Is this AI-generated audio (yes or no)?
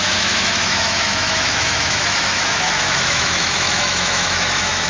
yes